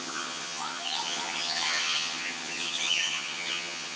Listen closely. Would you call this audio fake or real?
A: fake